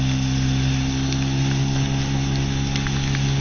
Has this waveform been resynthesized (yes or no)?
no